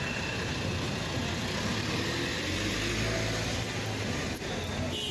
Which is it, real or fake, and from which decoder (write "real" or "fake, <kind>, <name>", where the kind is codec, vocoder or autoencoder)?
real